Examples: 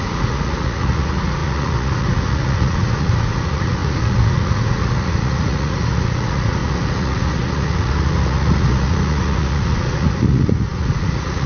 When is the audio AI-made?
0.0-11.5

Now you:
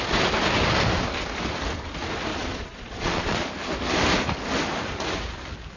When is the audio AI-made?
2.3-3.5

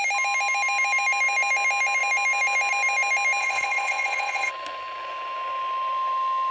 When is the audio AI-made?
3.4-4.5